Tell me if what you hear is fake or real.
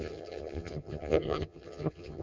fake